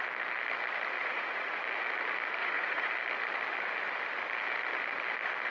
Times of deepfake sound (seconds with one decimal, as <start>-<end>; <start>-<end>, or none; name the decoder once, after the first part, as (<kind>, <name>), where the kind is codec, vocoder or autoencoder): 1.0-1.6 (vocoder, Vocos); 2.4-2.9